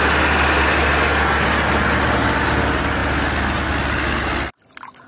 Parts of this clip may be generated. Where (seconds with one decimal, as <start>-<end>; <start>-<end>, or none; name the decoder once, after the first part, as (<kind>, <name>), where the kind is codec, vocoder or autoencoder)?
none